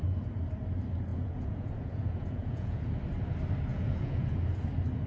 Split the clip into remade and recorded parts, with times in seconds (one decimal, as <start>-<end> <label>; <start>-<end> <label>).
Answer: 0.0-1.1 recorded; 1.1-2.9 remade; 2.9-3.7 recorded; 3.7-4.4 remade; 4.4-5.1 recorded